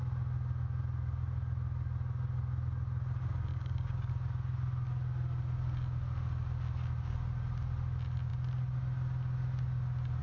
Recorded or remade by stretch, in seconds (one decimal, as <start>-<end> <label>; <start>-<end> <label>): 0.0-3.5 recorded; 3.5-4.1 remade; 4.1-10.2 recorded